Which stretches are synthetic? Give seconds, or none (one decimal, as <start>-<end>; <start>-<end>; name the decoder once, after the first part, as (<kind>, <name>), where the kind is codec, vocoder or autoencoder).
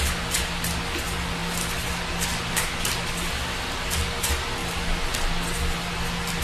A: none